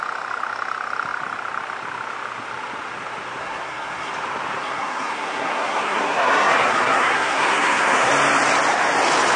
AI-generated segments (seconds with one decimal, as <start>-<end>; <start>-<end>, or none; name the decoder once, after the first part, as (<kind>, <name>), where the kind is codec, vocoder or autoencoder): 3.4-4.1 (codec, SNAC); 4.6-8.1